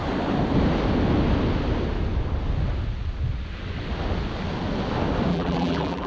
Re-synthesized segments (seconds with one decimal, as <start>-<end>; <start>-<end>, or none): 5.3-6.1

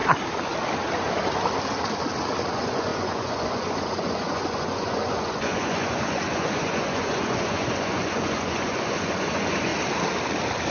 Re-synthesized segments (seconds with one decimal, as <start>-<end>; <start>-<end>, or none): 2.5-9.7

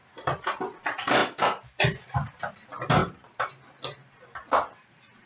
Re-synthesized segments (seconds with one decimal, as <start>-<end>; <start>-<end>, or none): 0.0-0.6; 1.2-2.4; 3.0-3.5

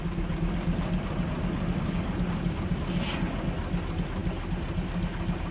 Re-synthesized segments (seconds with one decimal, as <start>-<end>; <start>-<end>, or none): none

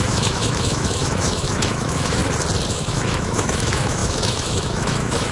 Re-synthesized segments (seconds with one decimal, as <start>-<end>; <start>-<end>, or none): 0.0-2.2; 2.7-5.3